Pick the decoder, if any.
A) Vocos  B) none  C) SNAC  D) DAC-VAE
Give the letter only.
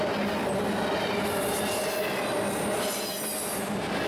B